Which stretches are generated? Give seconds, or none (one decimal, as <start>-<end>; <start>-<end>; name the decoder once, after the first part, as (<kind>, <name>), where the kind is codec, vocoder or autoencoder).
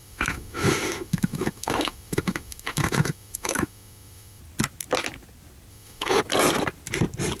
0.0-4.4 (autoencoder, DAC-VAE); 5.7-6.2